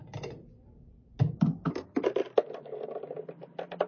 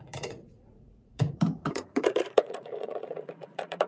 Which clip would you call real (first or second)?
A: first